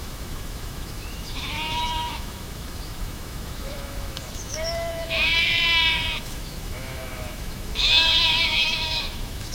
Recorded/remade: remade